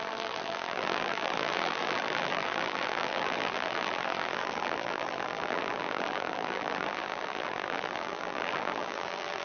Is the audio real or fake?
fake